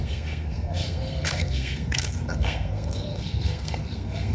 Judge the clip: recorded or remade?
remade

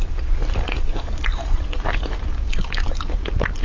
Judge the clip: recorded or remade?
recorded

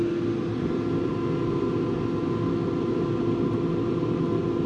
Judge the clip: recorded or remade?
recorded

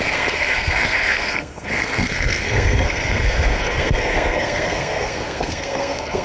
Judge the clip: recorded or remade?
remade